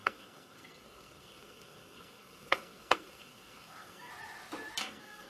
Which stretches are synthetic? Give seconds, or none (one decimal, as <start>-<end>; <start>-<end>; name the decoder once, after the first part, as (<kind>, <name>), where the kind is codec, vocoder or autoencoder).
0.0-4.1 (codec, SNAC); 4.8-5.3